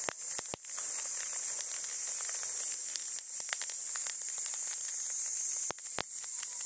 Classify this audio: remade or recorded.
recorded